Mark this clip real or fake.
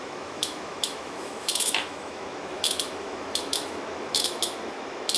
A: fake